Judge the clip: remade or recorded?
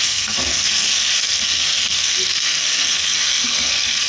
remade